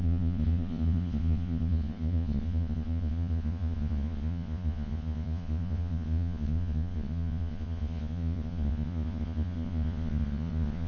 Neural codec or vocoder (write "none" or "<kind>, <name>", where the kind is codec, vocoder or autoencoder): vocoder, Vocos